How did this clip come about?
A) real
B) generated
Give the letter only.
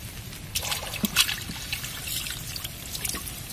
A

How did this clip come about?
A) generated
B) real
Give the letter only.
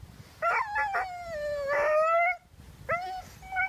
B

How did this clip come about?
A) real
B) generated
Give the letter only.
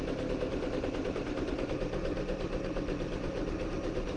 A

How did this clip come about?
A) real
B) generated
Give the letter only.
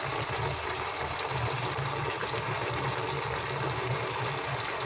A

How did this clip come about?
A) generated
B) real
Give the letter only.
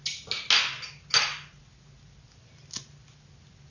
B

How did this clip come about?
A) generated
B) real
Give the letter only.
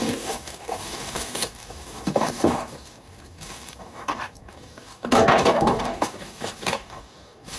A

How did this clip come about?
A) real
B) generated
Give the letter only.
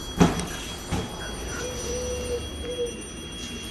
A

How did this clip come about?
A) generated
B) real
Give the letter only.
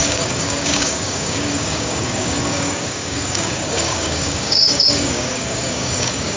A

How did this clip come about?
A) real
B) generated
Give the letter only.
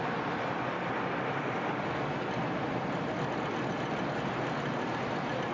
A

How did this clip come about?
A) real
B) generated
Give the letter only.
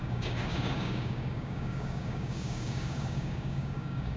B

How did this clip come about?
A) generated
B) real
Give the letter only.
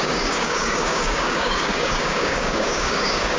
A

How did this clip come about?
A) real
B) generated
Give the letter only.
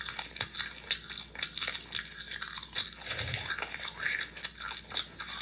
A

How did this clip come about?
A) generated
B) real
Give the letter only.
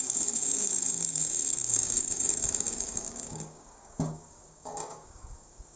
A